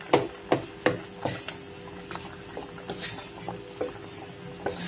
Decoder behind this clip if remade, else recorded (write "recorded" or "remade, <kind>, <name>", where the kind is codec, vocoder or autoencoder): recorded